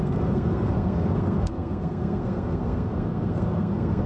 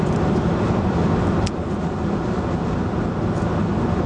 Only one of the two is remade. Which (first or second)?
first